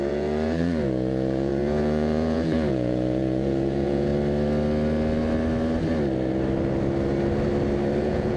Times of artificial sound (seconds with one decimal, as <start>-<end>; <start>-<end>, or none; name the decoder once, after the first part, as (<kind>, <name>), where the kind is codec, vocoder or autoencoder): 0.0-4.1 (vocoder, Vocos); 8.0-8.4